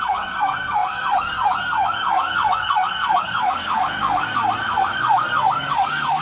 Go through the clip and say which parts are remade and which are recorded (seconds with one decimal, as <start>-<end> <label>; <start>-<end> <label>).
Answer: 0.0-6.2 remade

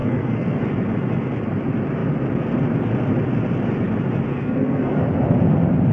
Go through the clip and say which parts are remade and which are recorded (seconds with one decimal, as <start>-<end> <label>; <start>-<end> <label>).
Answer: 0.0-0.6 remade; 0.6-4.3 recorded; 4.3-5.0 remade; 5.0-5.9 recorded

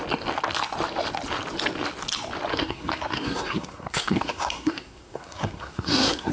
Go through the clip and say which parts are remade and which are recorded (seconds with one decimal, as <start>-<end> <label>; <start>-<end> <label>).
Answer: 0.0-2.5 recorded; 2.5-6.3 remade

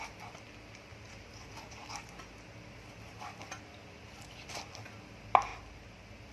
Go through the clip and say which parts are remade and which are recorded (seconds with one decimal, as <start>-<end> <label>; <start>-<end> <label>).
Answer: 0.0-6.3 recorded

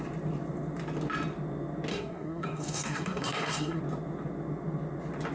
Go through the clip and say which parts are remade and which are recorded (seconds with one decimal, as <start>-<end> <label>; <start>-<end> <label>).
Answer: 0.0-1.9 recorded; 1.9-3.8 remade; 3.8-5.3 recorded